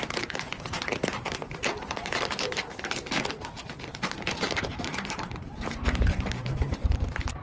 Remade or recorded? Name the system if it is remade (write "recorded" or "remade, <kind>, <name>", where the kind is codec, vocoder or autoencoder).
remade, vocoder, BigVGAN v2